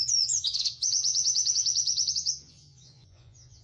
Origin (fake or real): fake